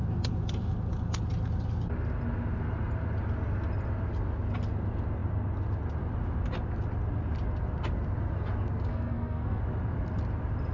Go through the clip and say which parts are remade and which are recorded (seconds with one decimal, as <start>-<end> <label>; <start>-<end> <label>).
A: 0.0-8.9 recorded; 8.9-9.6 remade; 9.6-10.7 recorded

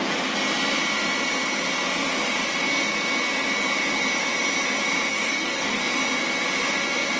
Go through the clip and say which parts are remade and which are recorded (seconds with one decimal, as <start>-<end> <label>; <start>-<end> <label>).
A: 0.0-5.1 recorded; 5.1-5.8 remade; 5.8-7.2 recorded